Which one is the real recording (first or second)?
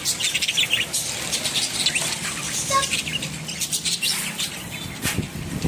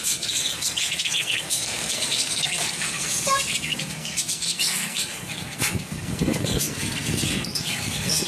first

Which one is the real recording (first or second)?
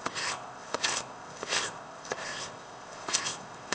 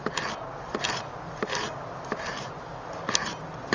second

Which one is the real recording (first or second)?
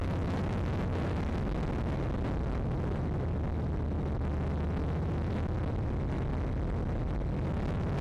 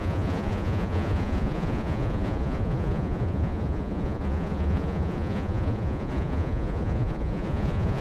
first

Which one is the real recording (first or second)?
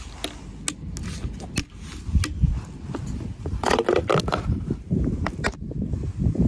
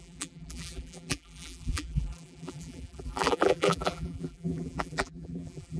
first